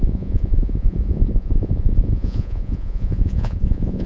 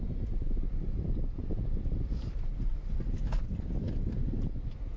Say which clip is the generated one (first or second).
first